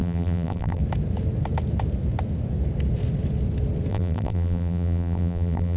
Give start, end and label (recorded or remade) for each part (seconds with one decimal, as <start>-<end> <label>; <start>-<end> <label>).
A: 0.0-0.8 remade; 0.8-3.9 recorded; 3.9-5.8 remade

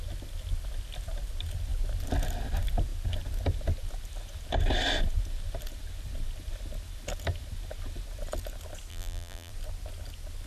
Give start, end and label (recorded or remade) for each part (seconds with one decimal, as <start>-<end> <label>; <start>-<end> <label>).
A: 0.0-8.9 recorded; 8.9-9.5 remade; 9.5-10.5 recorded

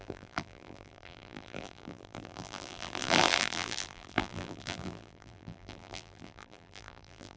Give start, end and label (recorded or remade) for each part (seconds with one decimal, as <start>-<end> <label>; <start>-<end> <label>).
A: 0.0-7.4 remade

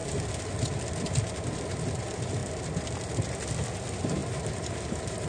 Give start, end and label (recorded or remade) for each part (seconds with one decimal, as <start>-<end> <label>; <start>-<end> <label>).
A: 0.0-4.2 recorded; 4.2-5.3 remade

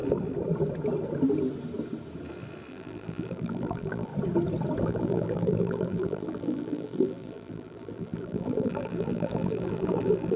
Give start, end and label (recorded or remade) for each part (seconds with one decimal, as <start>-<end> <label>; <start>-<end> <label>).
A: 0.0-2.7 recorded; 2.7-4.1 remade; 4.1-4.8 recorded; 4.8-10.4 remade

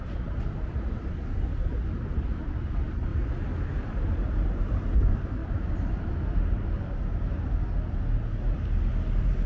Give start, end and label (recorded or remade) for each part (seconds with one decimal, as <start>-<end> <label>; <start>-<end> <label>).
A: 0.0-3.1 recorded; 3.1-4.6 remade; 4.6-5.4 recorded; 5.4-6.1 remade; 6.1-9.5 recorded

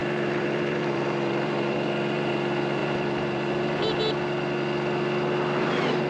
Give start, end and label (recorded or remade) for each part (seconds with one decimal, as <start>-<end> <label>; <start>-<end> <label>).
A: 0.0-2.3 remade; 2.3-2.8 recorded; 2.8-4.0 remade; 4.0-6.1 recorded